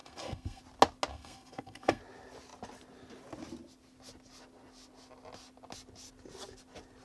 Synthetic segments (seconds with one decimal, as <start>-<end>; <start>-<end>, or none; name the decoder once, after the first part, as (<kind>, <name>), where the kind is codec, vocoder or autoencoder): 0.0-0.6 (codec, SNAC); 1.1-2.0